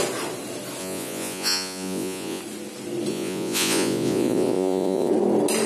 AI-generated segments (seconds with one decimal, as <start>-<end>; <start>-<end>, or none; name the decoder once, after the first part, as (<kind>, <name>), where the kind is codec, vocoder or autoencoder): 0.8-2.4 (vocoder, Vocos); 3.1-5.1